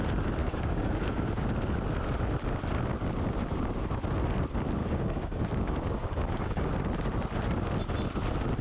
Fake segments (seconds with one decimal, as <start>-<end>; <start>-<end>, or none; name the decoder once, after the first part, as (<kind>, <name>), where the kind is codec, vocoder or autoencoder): 0.4-1.5 (codec, DAC); 4.8-6.7

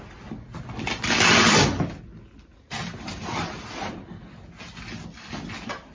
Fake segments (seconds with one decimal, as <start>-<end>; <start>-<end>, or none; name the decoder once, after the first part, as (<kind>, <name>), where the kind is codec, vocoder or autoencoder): 2.5-4.0 (vocoder, BigVGAN v2)

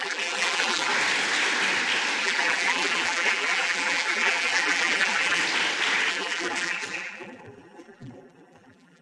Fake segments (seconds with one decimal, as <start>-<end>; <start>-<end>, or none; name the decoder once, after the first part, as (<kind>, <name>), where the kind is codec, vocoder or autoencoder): 0.0-0.9 (vocoder, BigVGAN v2); 2.2-5.4; 6.1-9.0

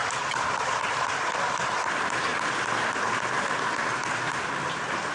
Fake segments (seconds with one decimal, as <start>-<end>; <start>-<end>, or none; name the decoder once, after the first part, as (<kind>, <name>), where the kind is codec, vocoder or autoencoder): none

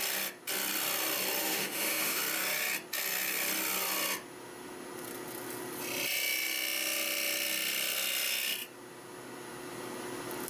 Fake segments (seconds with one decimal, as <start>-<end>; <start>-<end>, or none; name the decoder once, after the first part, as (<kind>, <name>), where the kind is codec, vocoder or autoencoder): 1.4-2.2 (autoencoder, DAC-VAE)

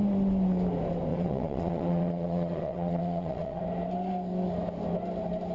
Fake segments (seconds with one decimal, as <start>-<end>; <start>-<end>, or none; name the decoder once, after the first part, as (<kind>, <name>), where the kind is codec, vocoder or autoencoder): 1.1-3.6 (vocoder, WaveNeXt)

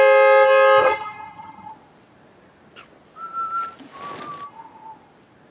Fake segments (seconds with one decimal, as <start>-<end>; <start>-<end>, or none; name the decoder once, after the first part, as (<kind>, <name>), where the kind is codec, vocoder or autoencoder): 0.8-1.7 (vocoder, HiFi-GAN)